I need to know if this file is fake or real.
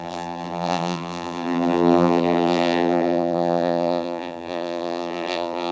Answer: fake